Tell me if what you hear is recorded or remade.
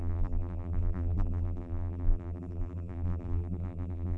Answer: remade